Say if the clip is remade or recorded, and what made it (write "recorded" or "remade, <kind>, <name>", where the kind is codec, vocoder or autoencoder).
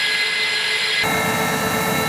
recorded